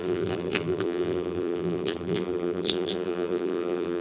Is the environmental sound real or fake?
fake